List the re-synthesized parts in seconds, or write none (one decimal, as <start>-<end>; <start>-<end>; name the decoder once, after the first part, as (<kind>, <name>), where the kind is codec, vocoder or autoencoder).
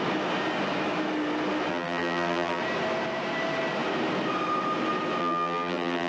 1.7-2.6 (vocoder, BigVGAN v2); 5.2-6.1